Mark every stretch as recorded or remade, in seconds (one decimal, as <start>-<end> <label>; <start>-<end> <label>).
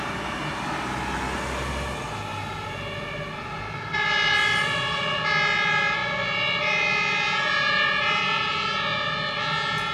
0.0-2.3 recorded; 2.3-5.0 remade; 5.0-9.9 recorded